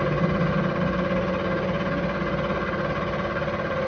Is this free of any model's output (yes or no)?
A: yes